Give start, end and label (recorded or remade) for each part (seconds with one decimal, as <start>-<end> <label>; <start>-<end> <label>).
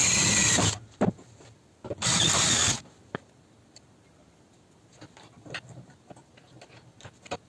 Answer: 0.0-2.4 remade; 2.4-7.5 recorded